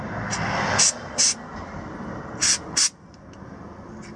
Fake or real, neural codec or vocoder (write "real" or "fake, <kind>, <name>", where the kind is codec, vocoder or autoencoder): real